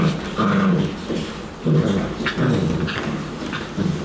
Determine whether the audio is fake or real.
real